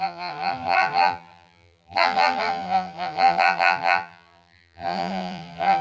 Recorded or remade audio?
remade